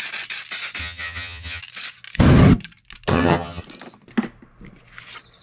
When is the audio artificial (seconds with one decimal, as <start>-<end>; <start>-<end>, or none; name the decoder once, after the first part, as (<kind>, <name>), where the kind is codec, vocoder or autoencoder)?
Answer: 0.8-1.6 (vocoder, HiFi-GAN); 3.1-3.6